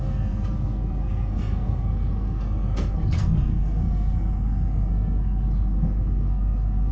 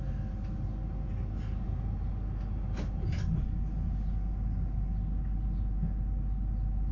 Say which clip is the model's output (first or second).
first